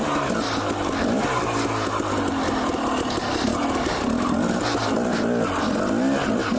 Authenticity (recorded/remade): recorded